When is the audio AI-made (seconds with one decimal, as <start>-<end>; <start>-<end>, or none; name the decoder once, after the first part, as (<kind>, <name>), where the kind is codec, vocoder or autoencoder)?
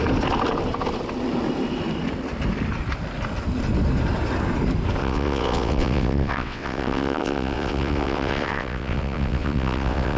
5.0-10.2 (vocoder, WaveNeXt)